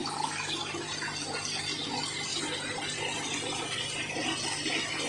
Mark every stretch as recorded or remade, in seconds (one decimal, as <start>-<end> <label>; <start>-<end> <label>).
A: 0.0-5.1 recorded